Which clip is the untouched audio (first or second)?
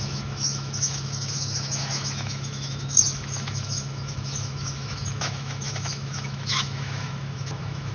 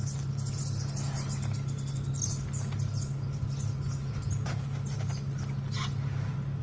second